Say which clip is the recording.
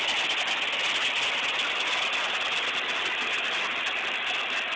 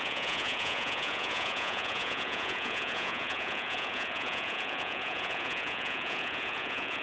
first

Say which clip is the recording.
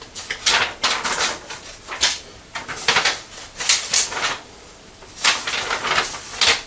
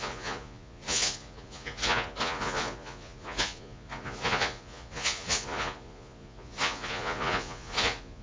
first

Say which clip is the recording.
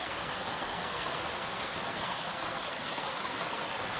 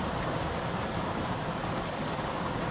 second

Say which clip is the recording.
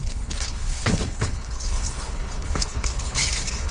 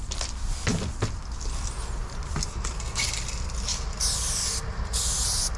second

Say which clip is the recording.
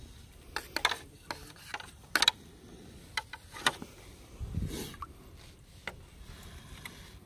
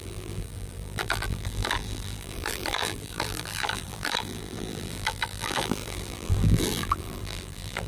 first